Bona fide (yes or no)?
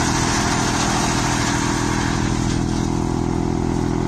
yes